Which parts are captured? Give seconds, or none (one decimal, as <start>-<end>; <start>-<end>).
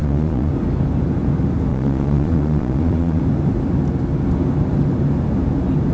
0.5-1.7; 3.2-5.9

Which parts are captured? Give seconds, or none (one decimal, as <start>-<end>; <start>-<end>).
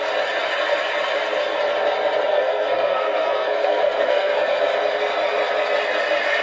0.0-2.3; 4.6-6.4